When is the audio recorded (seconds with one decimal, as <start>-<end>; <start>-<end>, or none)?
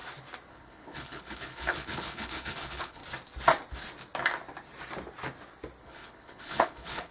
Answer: 0.0-0.5; 3.0-5.8